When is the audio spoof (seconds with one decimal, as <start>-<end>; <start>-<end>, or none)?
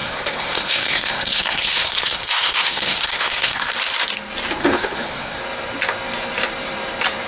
0.0-3.7; 4.6-5.4